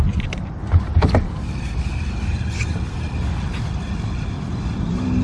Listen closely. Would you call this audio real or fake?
real